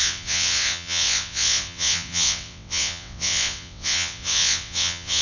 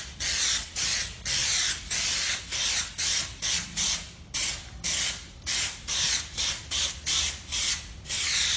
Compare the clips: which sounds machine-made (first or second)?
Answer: first